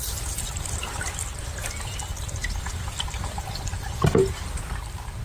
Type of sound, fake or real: real